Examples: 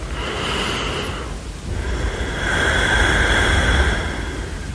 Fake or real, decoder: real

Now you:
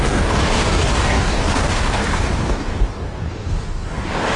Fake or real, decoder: fake, codec, DAC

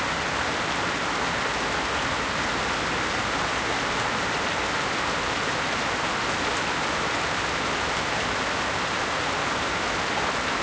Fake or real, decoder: real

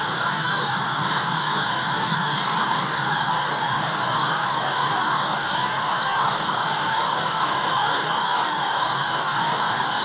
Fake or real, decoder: fake, codec, DAC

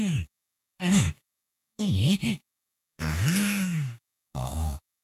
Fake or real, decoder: fake, codec, DAC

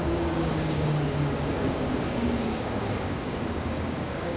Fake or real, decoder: fake, codec, DAC